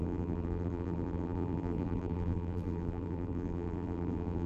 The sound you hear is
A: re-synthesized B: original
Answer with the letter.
A